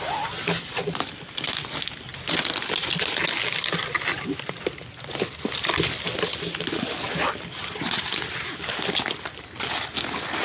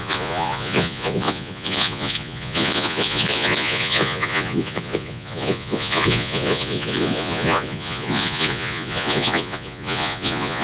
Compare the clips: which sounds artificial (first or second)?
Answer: second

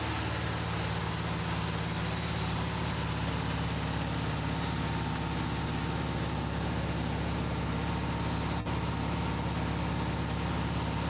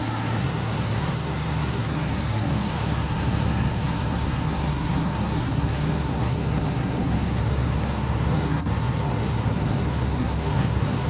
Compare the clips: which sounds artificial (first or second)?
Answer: second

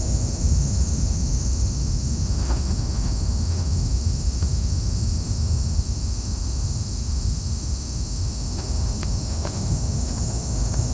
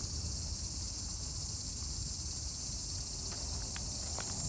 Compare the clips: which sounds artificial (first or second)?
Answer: first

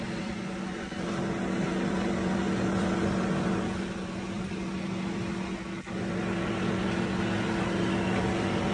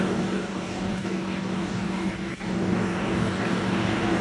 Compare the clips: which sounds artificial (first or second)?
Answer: second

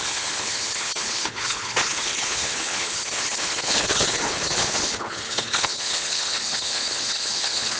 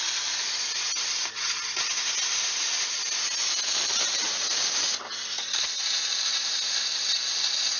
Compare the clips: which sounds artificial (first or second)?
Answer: first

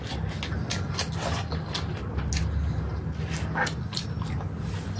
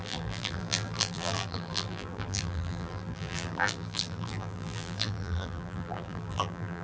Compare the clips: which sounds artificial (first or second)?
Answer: second